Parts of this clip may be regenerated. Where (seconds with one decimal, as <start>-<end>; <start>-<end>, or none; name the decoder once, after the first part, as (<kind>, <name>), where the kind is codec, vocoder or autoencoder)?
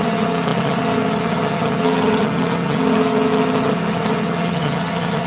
0.0-5.3 (vocoder, HiFi-GAN)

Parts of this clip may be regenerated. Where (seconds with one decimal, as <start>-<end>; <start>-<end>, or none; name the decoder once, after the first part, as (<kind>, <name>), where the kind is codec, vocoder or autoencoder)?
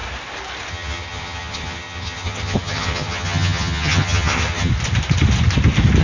0.7-4.7 (vocoder, HiFi-GAN)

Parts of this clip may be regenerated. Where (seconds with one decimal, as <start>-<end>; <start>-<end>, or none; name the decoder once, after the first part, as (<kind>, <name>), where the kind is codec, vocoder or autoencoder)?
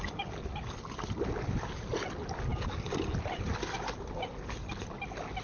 none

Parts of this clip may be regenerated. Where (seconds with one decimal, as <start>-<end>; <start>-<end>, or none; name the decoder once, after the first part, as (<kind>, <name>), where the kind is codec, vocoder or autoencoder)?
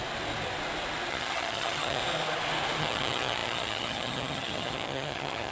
1.1-2.0 (vocoder, HiFi-GAN); 2.8-5.5